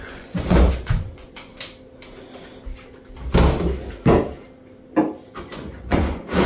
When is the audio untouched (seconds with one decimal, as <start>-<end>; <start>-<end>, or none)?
1.5-5.4